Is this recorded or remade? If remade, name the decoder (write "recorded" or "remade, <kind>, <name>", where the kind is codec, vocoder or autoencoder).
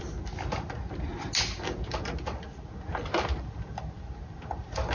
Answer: recorded